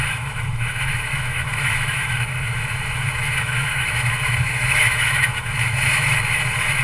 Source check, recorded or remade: remade